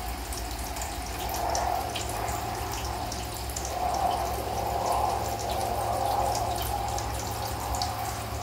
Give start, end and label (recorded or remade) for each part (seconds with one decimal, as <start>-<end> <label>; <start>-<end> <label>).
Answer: 0.0-8.4 recorded